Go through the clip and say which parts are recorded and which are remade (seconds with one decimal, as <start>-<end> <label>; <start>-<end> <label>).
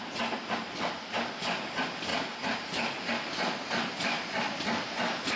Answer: 0.0-5.4 recorded